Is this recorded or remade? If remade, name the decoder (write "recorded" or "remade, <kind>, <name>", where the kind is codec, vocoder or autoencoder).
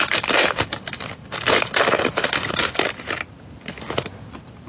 remade, vocoder, BigVGAN v2